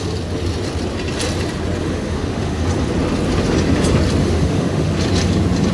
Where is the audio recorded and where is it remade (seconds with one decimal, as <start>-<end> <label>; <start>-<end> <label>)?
0.0-1.8 recorded; 1.8-2.6 remade; 2.6-4.2 recorded; 4.2-4.9 remade; 4.9-5.7 recorded